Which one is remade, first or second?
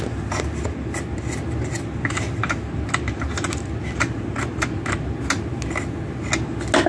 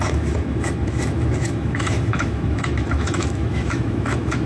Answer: second